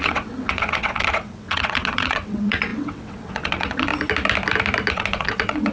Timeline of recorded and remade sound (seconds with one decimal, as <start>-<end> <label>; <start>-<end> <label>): 0.0-3.9 remade; 3.9-4.9 recorded; 4.9-5.7 remade